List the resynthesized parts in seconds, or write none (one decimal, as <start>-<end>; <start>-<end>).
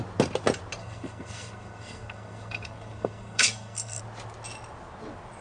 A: 0.8-4.0